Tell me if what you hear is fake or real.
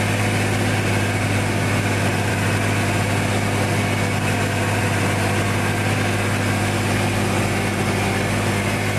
real